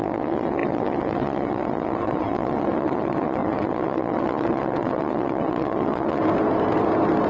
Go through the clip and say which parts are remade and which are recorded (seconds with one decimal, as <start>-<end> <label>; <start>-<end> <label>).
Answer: 0.0-6.2 remade; 6.2-7.3 recorded